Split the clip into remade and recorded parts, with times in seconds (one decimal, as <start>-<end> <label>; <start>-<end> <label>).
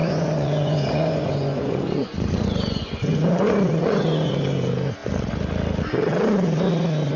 0.0-4.3 remade; 4.3-7.2 recorded